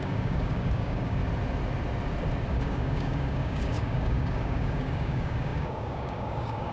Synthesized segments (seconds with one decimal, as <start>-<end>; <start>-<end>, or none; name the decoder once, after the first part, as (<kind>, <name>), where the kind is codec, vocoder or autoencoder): 0.0-1.2 (codec, DAC); 2.5-6.7